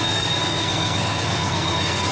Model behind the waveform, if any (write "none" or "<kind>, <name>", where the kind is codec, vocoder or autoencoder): codec, SNAC